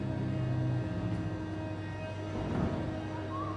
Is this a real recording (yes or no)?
yes